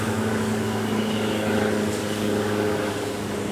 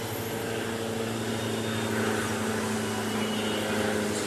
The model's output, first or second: first